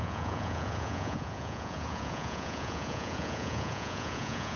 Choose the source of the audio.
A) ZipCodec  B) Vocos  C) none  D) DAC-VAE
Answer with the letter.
B